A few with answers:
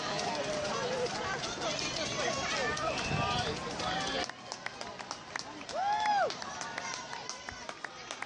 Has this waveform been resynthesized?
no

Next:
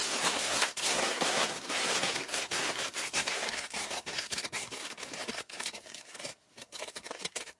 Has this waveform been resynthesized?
yes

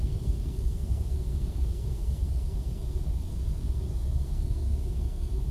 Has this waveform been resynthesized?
yes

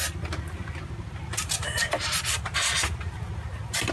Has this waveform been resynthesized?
no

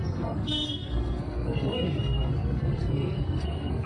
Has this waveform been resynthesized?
yes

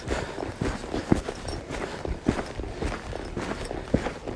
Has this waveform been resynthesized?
no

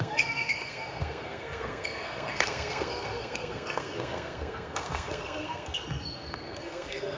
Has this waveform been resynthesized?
yes